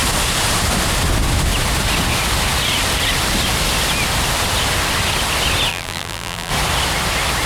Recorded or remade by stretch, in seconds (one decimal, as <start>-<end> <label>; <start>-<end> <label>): 0.0-5.7 recorded; 5.7-6.5 remade; 6.5-7.5 recorded